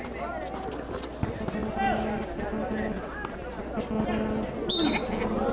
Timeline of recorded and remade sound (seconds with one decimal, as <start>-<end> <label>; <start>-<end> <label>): 0.0-5.5 recorded